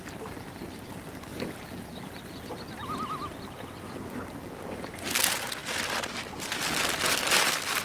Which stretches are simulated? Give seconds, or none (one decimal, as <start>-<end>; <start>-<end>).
none